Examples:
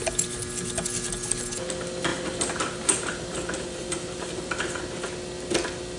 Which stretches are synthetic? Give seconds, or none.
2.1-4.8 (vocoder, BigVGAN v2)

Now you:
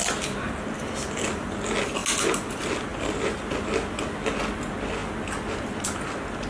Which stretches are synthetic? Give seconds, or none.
none

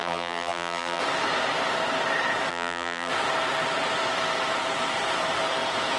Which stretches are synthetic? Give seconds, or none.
0.0-1.0 (vocoder, BigVGAN v2); 2.5-3.1

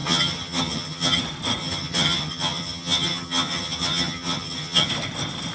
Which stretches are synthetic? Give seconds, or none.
0.0-1.2 (vocoder, HiFi-GAN); 1.6-4.9